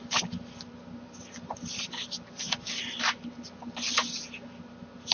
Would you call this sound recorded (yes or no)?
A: yes